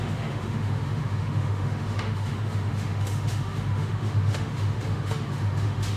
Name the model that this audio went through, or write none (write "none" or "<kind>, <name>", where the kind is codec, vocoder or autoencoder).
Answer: autoencoder, DAC-VAE